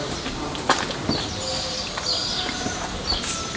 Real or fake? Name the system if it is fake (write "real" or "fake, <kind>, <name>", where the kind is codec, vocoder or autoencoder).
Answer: real